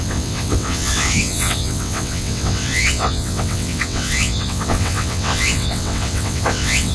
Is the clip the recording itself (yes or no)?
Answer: no